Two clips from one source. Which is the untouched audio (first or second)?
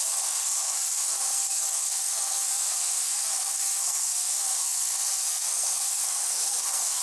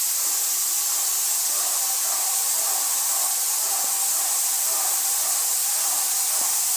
second